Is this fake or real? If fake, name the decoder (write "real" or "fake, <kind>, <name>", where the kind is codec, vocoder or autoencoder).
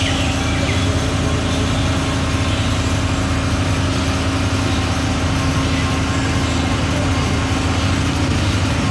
real